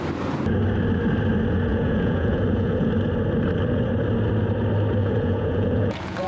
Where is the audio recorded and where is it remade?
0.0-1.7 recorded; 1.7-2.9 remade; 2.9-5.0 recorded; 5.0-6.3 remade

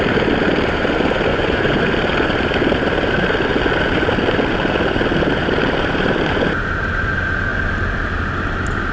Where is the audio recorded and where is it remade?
0.0-1.3 recorded; 1.3-1.8 remade; 1.8-8.9 recorded

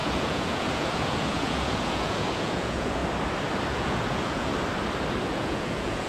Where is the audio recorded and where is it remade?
0.0-3.0 remade; 3.0-3.7 recorded; 3.7-4.5 remade; 4.5-5.2 recorded; 5.2-6.1 remade

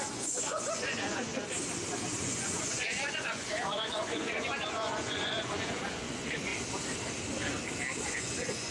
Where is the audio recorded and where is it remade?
0.0-1.3 remade; 1.3-2.2 recorded; 2.2-6.5 remade; 6.5-8.0 recorded; 8.0-8.7 remade

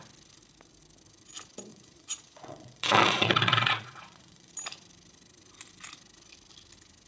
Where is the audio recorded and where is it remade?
0.0-1.7 recorded; 1.7-4.5 remade; 4.5-7.1 recorded

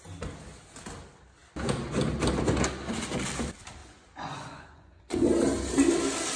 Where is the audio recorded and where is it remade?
0.0-3.8 recorded; 3.8-5.3 remade; 5.3-6.4 recorded

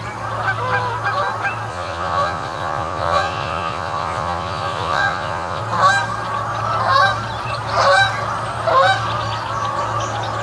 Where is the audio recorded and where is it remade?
0.0-1.7 recorded; 1.7-5.6 remade; 5.6-10.4 recorded